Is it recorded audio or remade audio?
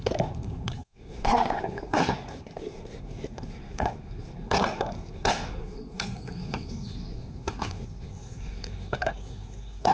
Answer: remade